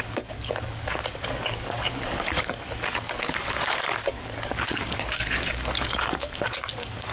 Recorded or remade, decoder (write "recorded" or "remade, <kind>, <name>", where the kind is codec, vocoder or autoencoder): remade, codec, DAC